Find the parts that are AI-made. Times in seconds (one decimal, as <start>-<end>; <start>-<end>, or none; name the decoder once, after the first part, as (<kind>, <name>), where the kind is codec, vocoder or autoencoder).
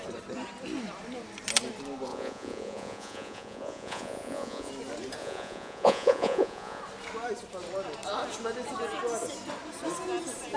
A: 2.1-4.7 (vocoder, Vocos); 5.2-6.8